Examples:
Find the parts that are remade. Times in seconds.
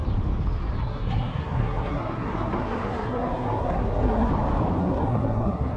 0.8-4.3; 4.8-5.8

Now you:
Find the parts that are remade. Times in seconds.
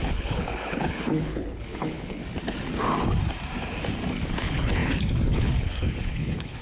0.0-2.2; 4.3-6.6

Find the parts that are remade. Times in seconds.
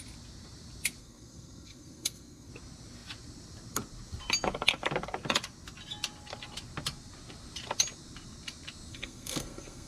1.0-2.5; 8.9-9.9